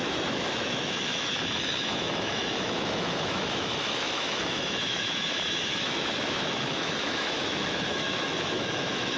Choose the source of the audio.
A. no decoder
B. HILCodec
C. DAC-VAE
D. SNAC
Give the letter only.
C